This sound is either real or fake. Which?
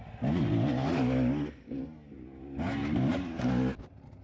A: real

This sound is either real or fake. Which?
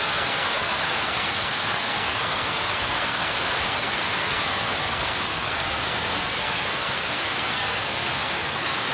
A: fake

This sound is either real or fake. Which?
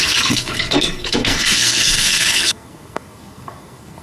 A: fake